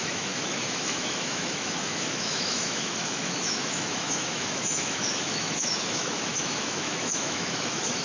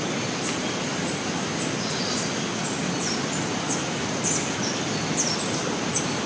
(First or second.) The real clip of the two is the second